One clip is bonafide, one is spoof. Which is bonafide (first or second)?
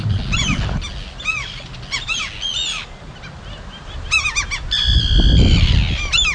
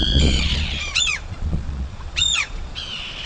first